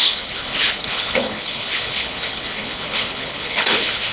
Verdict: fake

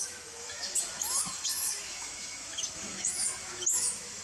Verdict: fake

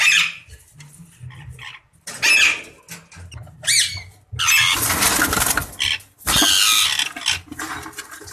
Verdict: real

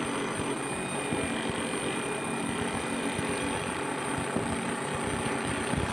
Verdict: real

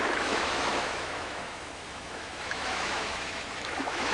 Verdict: fake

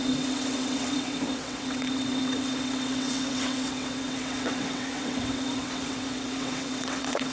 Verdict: fake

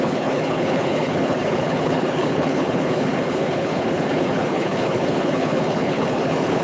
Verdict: fake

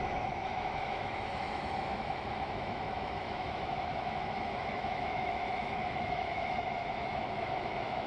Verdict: fake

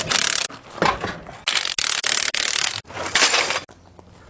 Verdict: real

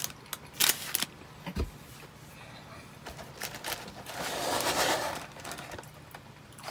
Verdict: real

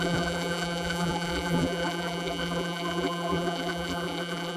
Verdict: fake